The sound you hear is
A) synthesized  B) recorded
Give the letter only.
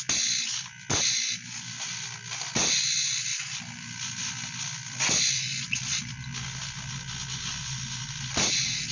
B